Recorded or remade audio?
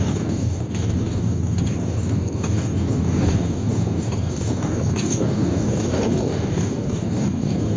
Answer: remade